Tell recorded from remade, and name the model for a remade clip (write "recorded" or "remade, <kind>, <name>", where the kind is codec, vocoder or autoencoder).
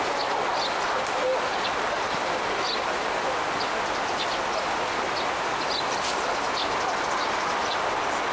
recorded